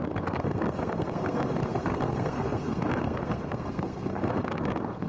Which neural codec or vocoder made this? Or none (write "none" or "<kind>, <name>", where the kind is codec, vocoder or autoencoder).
codec, SNAC